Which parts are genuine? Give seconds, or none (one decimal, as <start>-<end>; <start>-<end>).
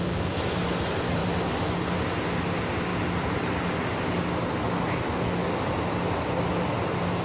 0.0-7.2